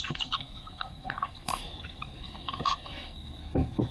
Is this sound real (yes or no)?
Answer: no